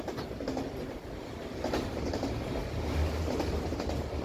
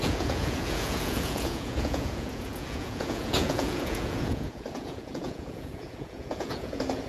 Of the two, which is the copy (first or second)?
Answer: second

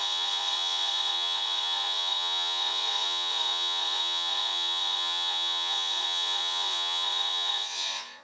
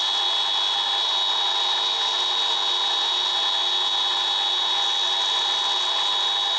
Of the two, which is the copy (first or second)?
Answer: first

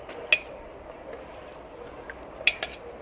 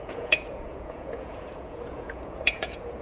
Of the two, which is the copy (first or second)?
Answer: second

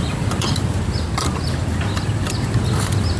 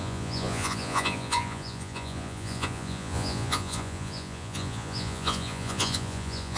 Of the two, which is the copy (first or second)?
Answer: second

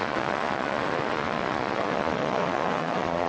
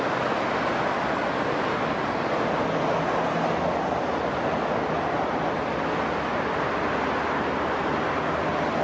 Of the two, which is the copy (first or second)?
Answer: first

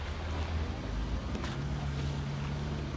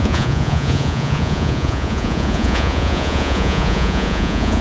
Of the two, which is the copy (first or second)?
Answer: second